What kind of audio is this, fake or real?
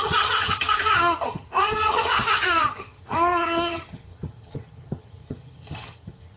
fake